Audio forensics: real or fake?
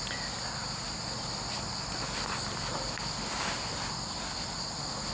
real